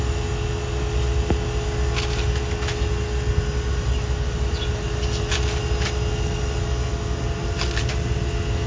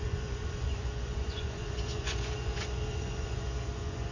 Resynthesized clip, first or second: second